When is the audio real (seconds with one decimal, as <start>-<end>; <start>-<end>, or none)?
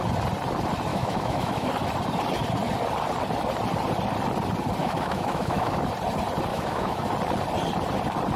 0.0-0.9; 1.7-4.8; 5.8-6.5; 7.1-8.4